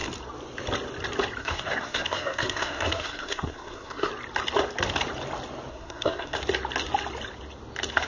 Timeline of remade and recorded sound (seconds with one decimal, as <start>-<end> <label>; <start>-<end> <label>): 0.0-1.4 recorded; 1.4-4.1 remade; 4.1-5.7 recorded; 5.7-6.4 remade; 6.4-8.1 recorded